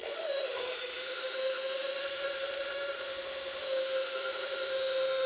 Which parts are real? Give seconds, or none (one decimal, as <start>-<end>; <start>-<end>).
none